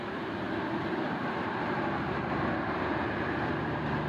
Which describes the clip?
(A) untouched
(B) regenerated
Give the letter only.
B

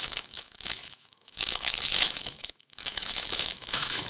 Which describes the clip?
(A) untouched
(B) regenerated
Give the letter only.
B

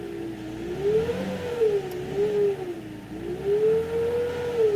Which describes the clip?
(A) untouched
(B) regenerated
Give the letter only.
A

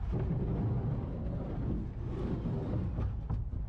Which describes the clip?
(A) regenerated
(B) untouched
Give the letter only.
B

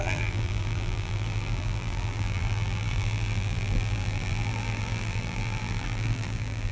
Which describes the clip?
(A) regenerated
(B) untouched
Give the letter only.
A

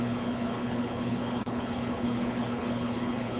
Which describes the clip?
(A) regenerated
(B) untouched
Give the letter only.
A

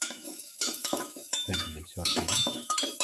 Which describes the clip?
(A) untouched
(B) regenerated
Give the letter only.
B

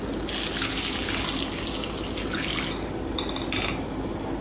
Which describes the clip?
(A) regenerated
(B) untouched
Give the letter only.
B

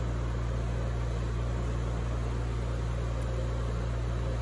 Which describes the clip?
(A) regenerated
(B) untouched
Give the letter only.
B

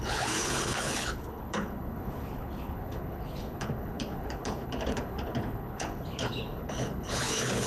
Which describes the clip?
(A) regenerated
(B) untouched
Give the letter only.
A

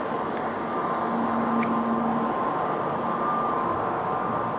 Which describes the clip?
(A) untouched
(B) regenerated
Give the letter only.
A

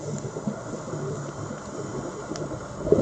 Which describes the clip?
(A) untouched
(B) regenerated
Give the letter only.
A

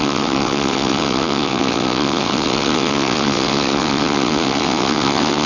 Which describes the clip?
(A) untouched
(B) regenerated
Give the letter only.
B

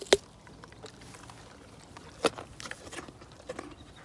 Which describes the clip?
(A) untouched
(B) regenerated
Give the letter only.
A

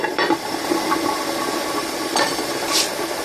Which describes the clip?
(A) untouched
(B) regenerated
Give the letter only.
B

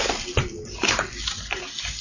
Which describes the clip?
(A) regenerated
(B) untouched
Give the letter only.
B